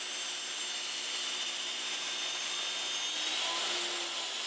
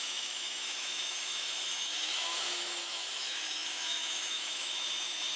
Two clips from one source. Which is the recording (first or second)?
first